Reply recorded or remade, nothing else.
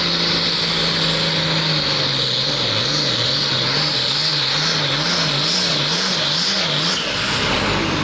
recorded